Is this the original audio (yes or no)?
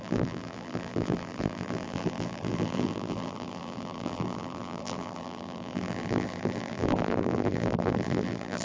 no